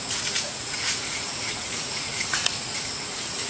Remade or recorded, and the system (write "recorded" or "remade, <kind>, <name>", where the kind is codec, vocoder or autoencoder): remade, vocoder, Vocos